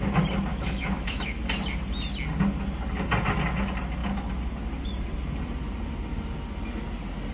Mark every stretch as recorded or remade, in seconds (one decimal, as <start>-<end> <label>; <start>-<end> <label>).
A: 0.0-0.5 recorded; 0.5-1.4 remade; 1.4-7.3 recorded